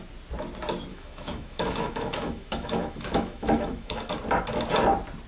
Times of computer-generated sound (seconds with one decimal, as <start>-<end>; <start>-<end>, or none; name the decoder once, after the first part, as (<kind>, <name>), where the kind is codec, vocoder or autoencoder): 0.9-4.1 (autoencoder, DAC-VAE)